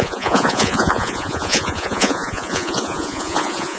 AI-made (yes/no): yes